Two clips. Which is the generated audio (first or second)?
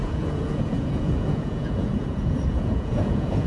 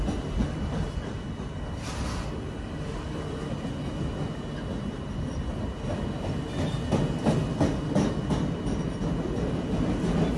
first